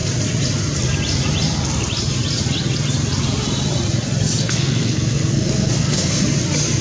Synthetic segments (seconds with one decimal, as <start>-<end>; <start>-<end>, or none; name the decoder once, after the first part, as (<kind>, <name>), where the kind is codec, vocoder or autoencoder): 4.4-6.2 (codec, SNAC)